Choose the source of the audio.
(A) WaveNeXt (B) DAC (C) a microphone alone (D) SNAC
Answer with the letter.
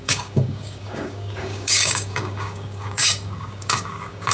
B